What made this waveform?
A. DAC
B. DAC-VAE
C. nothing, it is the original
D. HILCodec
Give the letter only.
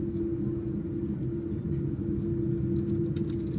C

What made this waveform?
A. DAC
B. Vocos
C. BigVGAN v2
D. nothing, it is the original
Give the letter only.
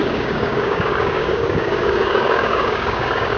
A